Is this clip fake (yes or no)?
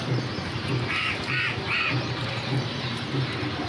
yes